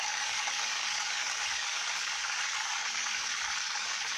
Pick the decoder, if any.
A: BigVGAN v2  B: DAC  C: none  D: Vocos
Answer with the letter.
B